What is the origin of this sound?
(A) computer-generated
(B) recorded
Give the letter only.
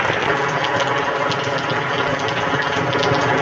B